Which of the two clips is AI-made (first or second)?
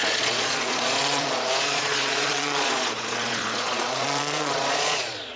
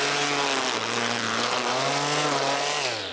first